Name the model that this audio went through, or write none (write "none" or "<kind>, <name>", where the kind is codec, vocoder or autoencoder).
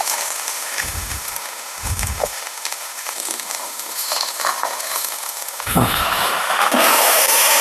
autoencoder, DAC-VAE